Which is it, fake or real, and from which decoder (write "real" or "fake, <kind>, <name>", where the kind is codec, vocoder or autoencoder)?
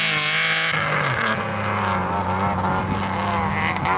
real